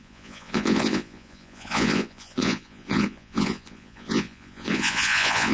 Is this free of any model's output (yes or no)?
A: no